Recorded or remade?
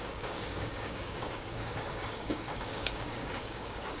remade